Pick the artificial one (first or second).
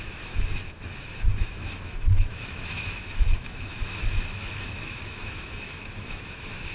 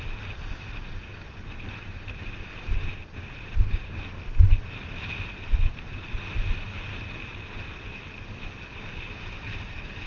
first